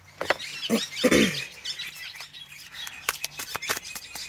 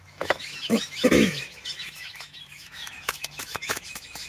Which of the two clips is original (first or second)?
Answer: first